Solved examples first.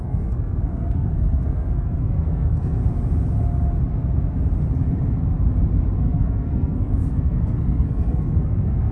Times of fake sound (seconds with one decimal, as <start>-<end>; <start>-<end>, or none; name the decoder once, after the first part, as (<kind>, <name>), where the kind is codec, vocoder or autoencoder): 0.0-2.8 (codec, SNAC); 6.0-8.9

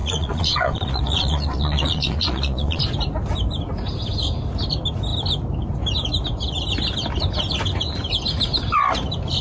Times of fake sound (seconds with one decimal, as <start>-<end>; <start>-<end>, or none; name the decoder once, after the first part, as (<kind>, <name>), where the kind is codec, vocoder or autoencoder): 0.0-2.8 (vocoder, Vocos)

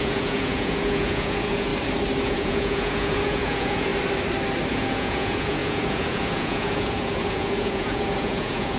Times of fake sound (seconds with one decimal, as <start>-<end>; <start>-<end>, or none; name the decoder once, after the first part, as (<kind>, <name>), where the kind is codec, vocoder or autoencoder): 0.0-1.7 (vocoder, Vocos); 2.2-3.9; 4.7-8.8

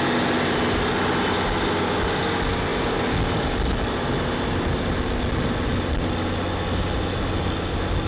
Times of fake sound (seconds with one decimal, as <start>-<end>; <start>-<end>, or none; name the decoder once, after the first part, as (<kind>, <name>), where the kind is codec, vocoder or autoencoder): none

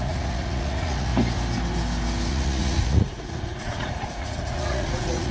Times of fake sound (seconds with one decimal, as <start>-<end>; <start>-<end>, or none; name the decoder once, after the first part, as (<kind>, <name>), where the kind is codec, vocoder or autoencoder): 0.0-1.1 (vocoder, Vocos); 2.3-5.3

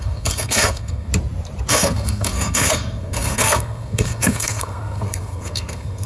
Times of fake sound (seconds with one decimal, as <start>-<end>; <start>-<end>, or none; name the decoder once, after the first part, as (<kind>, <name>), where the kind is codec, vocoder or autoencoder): 0.0-1.1 (codec, SNAC); 1.7-6.1

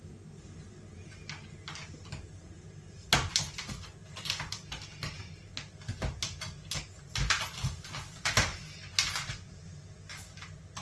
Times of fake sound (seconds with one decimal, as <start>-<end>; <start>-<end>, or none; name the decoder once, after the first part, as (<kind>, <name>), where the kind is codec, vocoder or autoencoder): none